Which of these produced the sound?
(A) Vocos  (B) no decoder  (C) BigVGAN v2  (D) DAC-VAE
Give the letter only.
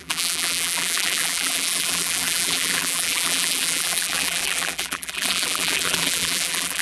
C